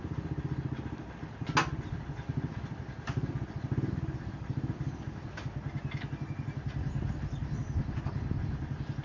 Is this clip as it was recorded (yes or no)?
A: yes